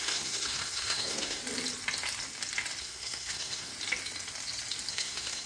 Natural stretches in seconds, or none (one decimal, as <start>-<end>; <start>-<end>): 1.4-2.8; 3.7-4.9